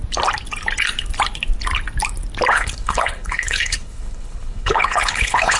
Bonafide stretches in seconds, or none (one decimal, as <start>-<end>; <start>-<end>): 0.0-2.5